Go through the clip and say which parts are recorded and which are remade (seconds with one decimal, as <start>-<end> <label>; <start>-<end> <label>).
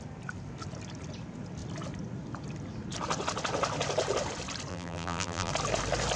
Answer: 0.0-4.7 recorded; 4.7-5.5 remade; 5.5-6.2 recorded